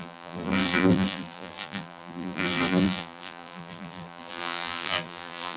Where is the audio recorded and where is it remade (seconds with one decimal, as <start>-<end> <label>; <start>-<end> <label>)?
0.0-5.6 remade